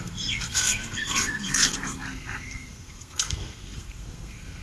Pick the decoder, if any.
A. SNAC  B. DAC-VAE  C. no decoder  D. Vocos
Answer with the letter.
A